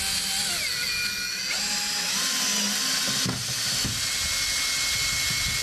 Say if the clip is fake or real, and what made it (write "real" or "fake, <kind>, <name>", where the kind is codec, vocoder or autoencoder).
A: real